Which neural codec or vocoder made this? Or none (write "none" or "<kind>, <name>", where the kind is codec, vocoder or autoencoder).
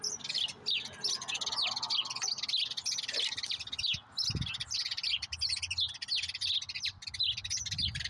none